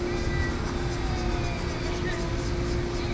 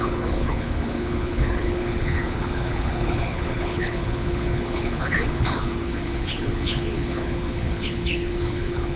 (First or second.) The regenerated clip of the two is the second